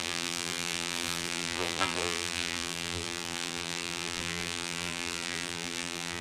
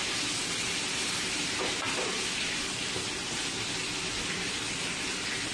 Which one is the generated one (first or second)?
first